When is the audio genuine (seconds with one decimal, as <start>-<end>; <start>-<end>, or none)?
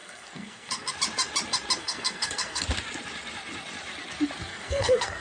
0.9-1.8; 2.6-4.5